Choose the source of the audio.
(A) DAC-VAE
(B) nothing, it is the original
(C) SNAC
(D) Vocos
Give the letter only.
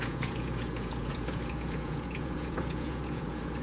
D